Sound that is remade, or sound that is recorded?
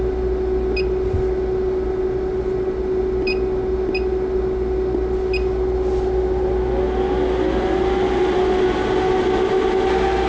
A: recorded